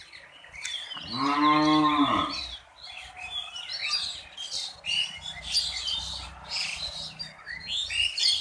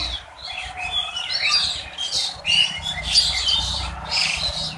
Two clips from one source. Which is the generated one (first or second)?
second